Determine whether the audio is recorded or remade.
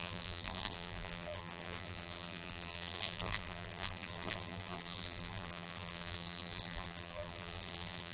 remade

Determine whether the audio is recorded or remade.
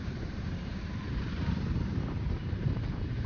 remade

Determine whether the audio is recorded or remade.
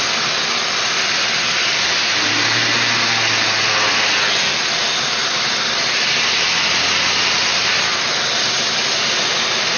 recorded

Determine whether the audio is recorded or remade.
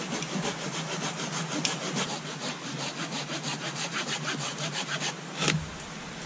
recorded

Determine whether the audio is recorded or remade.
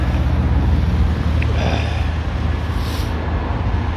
recorded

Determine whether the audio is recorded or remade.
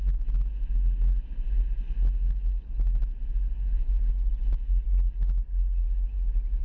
recorded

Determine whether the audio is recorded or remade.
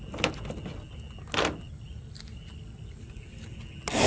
recorded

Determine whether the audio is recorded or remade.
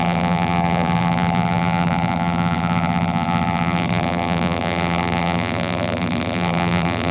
remade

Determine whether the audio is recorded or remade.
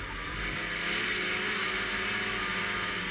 recorded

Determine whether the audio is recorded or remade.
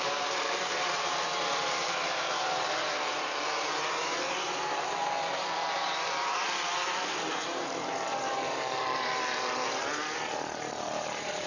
remade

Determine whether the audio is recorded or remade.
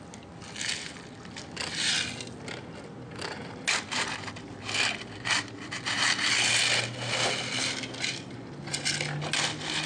recorded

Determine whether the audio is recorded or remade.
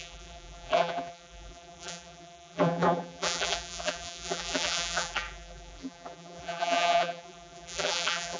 remade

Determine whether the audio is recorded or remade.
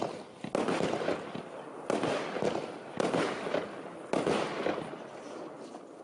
recorded